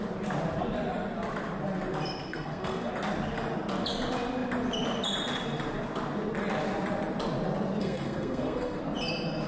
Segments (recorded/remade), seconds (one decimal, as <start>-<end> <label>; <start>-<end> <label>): 0.0-2.3 recorded; 2.3-2.9 remade; 2.9-7.8 recorded; 7.8-8.8 remade; 8.8-9.5 recorded